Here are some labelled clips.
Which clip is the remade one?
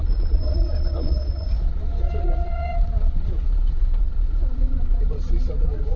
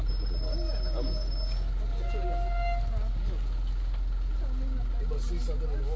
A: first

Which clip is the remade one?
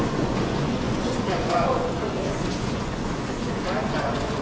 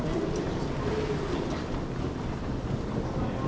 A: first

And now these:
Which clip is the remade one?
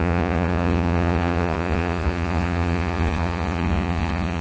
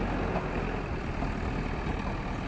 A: first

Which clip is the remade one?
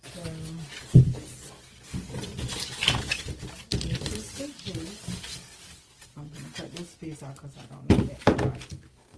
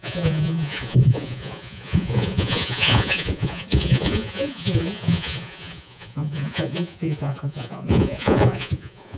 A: second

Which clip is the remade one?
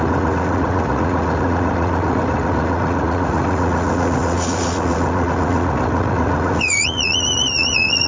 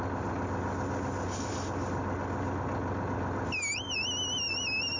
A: first